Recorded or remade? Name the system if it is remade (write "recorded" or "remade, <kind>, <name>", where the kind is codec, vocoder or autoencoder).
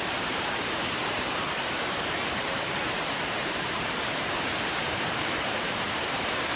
remade, vocoder, BigVGAN v2